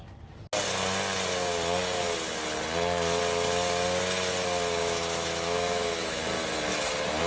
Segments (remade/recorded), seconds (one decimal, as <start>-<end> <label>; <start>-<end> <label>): 0.0-4.8 recorded; 4.8-6.2 remade; 6.2-7.3 recorded